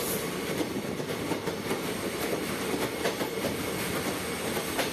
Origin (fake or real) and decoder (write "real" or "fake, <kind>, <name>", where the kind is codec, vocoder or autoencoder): real